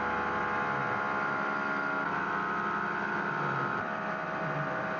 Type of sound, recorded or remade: remade